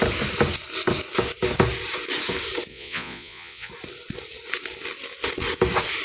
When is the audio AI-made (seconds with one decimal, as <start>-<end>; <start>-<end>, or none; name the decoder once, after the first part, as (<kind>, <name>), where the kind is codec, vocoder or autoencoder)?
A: 2.7-3.7 (vocoder, Vocos)